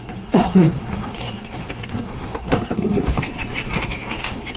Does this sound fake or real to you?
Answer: fake